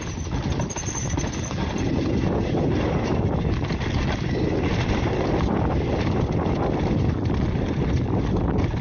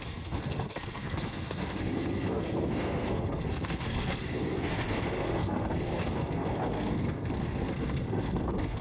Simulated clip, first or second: second